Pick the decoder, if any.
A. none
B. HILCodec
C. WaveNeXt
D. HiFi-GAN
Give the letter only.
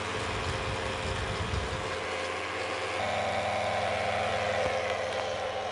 A